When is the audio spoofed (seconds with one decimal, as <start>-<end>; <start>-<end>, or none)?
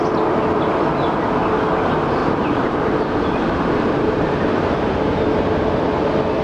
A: 2.2-5.4